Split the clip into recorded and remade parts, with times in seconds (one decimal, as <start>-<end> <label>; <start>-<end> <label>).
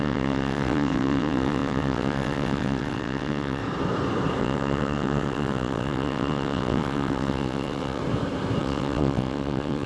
0.0-3.6 remade; 3.6-4.4 recorded; 4.4-8.0 remade; 8.0-8.6 recorded; 8.6-9.9 remade